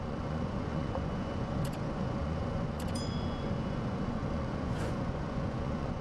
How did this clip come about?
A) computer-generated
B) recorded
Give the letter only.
A